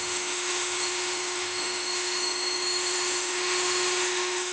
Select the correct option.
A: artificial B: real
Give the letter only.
A